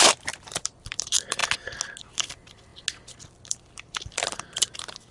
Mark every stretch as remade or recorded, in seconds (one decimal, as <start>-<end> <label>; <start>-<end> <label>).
0.0-1.4 remade; 1.4-2.0 recorded; 2.0-2.7 remade; 2.7-3.3 recorded; 3.3-5.1 remade